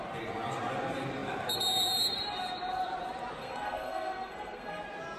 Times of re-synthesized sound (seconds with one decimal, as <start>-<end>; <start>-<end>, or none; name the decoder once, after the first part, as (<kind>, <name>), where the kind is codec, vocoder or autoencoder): 3.4-4.8 (codec, SNAC)